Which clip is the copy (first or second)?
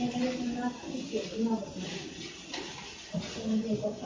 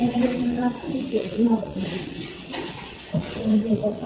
second